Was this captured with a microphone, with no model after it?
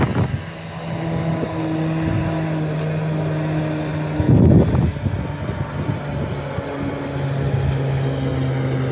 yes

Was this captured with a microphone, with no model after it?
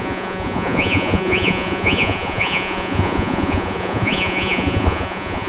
no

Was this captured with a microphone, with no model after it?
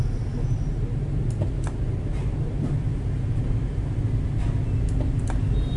yes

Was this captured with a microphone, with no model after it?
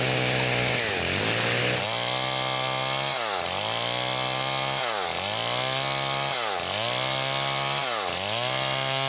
yes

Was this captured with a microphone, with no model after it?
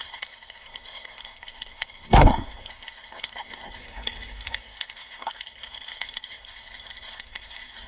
no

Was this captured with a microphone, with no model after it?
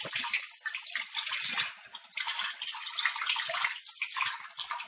yes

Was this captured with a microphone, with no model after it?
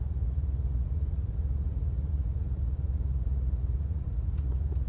no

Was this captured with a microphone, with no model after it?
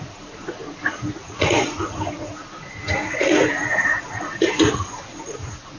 no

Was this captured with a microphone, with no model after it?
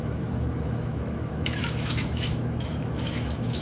no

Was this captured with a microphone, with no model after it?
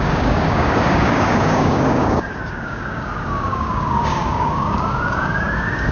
no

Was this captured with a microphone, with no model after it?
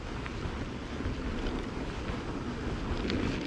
yes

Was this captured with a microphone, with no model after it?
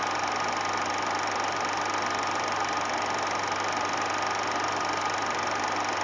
yes